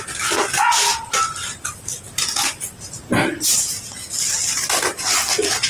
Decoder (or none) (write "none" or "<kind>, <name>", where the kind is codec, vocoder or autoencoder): none